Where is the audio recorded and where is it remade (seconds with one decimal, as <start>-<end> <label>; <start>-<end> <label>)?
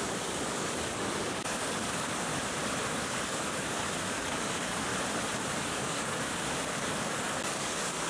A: 0.0-2.3 remade; 2.3-2.9 recorded; 2.9-4.9 remade; 4.9-5.5 recorded; 5.5-8.1 remade